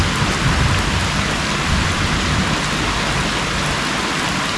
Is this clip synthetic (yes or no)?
no